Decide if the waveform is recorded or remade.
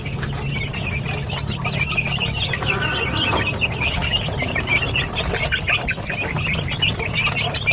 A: recorded